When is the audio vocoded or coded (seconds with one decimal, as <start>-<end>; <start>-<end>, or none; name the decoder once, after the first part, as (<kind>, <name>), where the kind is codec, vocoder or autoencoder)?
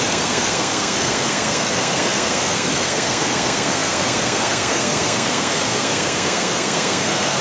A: 0.0-7.4 (codec, SNAC)